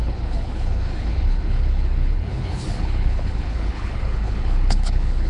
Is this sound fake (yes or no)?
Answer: yes